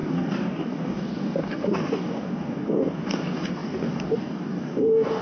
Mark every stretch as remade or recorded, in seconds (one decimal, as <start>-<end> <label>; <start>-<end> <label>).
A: 0.0-5.2 remade